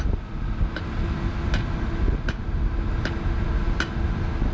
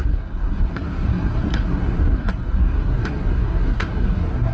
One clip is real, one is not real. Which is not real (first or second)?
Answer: second